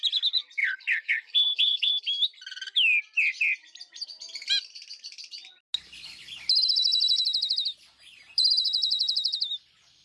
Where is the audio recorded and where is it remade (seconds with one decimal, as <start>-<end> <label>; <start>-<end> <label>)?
0.0-0.6 recorded; 0.6-2.0 remade; 2.0-10.0 recorded